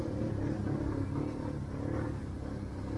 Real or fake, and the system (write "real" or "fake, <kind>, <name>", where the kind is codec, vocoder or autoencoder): real